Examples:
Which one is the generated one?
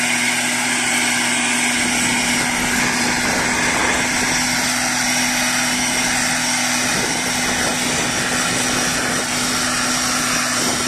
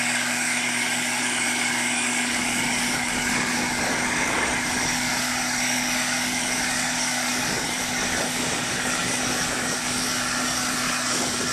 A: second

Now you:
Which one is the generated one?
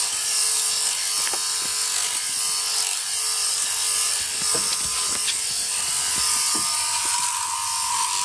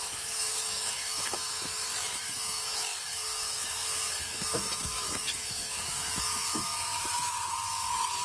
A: second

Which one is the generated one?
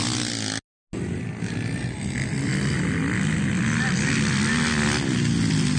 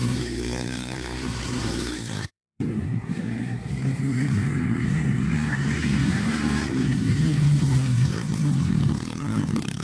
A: second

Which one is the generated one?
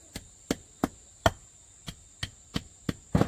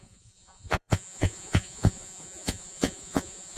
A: second